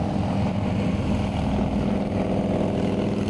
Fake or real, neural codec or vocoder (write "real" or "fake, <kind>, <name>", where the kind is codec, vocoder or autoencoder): real